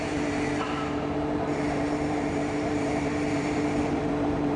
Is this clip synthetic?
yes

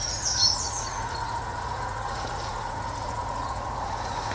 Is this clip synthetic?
yes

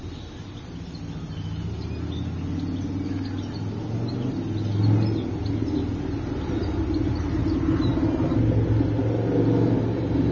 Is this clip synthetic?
no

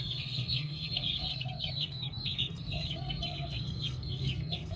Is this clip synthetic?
yes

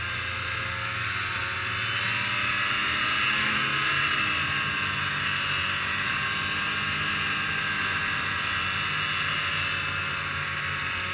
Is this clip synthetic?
no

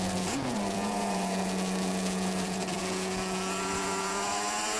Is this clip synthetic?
yes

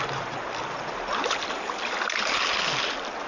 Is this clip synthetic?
no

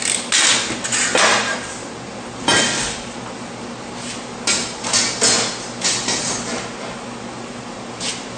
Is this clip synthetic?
no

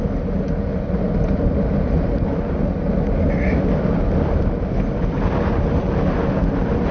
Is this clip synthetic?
no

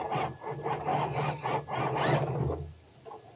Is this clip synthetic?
no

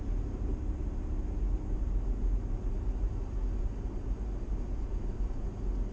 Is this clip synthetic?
no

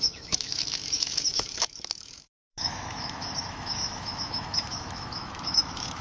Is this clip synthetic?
yes